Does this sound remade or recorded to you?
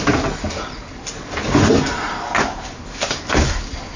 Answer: recorded